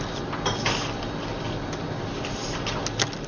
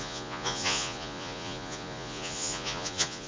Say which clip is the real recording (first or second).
first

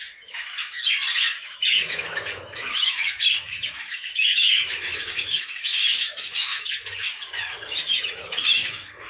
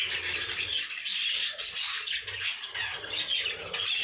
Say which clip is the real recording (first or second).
second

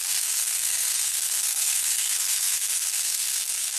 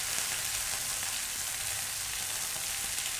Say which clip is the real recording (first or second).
second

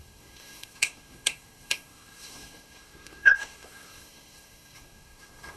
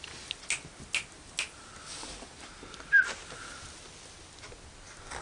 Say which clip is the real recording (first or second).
second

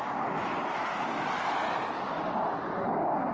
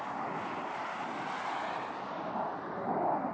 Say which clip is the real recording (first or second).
first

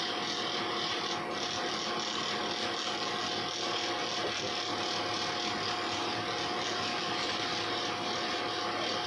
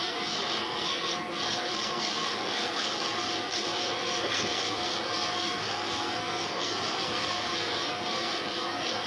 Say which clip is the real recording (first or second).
first